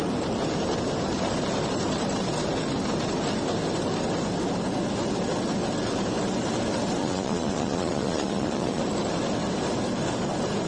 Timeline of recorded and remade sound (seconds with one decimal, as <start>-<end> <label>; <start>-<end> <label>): 0.0-7.0 recorded; 7.0-8.8 remade; 8.8-10.7 recorded